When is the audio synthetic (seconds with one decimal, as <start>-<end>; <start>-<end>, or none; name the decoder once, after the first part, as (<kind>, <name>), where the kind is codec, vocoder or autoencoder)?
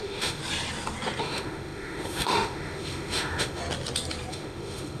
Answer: 0.0-0.4 (autoencoder, DAC-VAE); 1.2-3.6; 4.3-5.0